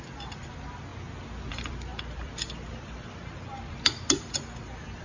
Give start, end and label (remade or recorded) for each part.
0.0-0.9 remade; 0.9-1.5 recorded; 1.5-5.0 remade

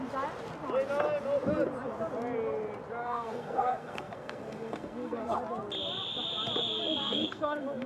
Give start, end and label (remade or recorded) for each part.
0.0-3.0 recorded; 3.0-5.4 remade; 5.4-7.0 recorded; 7.0-7.9 remade

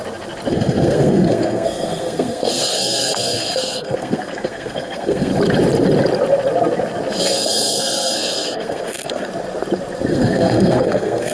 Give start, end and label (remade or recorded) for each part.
0.0-0.5 recorded; 0.5-5.3 remade; 5.3-7.2 recorded; 7.2-9.3 remade; 9.3-10.1 recorded; 10.1-11.3 remade

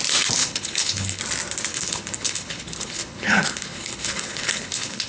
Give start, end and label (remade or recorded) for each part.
0.0-0.4 recorded; 0.4-1.2 remade; 1.2-1.7 recorded; 1.7-5.1 remade

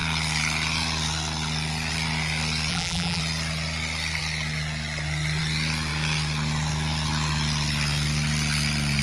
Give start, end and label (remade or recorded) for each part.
0.0-2.7 recorded; 2.7-3.2 remade; 3.2-9.0 recorded

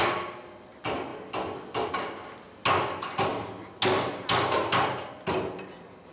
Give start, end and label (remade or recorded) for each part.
0.0-6.1 recorded

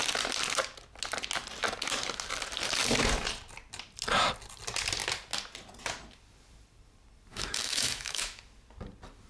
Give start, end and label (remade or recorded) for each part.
0.0-7.3 recorded; 7.3-8.4 remade; 8.4-9.3 recorded

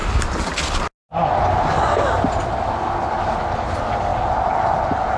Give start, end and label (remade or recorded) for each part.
0.0-5.2 recorded